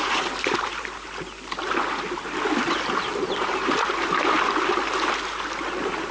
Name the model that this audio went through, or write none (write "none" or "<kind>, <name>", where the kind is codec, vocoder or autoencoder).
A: none